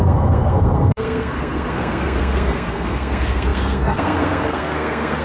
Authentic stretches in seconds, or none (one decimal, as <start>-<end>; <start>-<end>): none